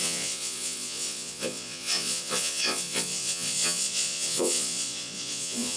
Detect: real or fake fake